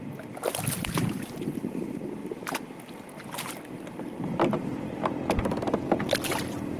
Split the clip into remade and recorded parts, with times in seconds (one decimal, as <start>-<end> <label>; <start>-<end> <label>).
0.0-6.8 recorded